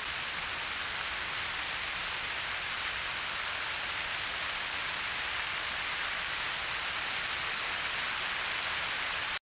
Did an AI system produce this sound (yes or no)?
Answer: no